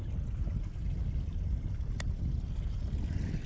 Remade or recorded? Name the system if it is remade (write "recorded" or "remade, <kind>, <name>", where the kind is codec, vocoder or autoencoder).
recorded